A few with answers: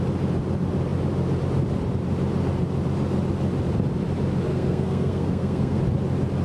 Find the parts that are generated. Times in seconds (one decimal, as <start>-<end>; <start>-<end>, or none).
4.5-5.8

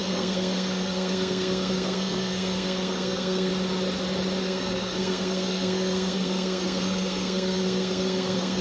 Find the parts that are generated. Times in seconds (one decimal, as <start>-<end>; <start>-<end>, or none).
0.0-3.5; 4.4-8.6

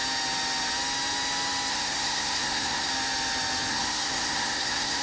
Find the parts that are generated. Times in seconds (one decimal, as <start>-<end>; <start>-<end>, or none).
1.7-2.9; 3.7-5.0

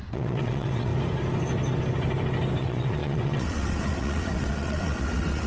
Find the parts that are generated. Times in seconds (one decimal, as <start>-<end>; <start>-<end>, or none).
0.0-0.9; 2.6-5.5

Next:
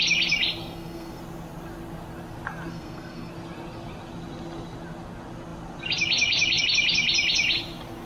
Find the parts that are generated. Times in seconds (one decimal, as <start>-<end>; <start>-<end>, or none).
0.6-1.2; 2.7-3.3

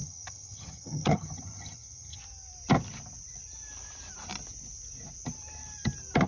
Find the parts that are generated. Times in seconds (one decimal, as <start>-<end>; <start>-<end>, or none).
0.0-2.2

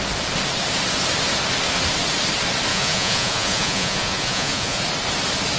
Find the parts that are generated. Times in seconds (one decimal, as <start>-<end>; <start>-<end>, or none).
2.7-4.8

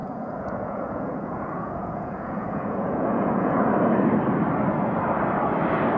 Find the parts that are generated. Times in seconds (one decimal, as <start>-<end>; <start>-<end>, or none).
0.0-3.6